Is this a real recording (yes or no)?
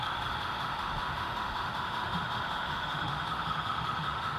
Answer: no